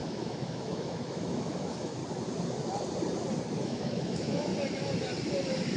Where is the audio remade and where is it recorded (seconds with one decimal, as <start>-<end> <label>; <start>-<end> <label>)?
0.0-2.0 remade; 2.0-3.6 recorded; 3.6-4.5 remade; 4.5-5.8 recorded